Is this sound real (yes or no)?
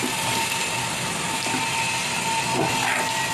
yes